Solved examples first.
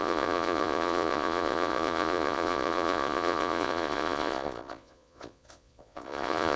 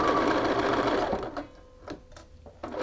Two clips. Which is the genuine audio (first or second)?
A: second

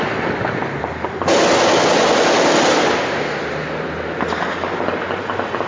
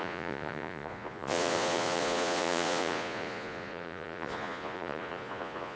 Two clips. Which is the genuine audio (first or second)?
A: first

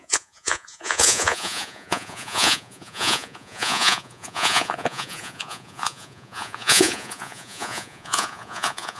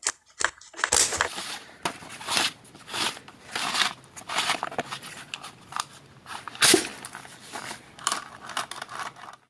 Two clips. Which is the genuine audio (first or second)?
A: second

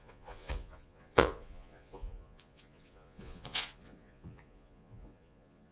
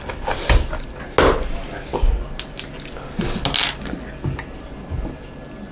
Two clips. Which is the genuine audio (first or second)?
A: second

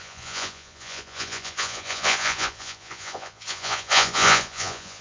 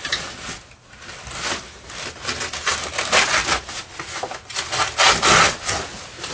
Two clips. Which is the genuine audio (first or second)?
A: second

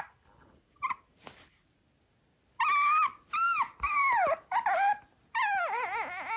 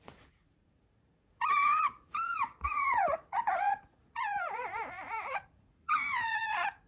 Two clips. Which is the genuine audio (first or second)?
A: first